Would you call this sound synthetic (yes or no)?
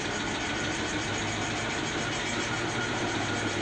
no